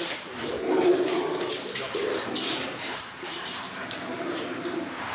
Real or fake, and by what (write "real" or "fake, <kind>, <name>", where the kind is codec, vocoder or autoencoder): fake, vocoder, BigVGAN v2